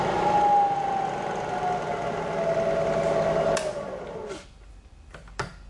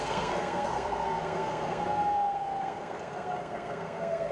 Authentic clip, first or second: first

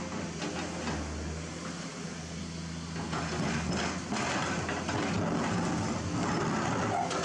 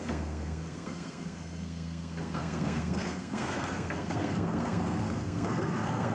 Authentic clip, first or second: first